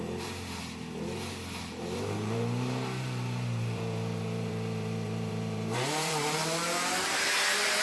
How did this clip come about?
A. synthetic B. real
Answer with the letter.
A